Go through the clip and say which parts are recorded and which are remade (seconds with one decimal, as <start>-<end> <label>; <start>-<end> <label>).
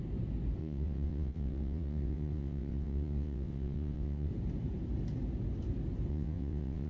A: 0.0-0.6 recorded; 0.6-4.3 remade; 4.3-6.1 recorded; 6.1-6.9 remade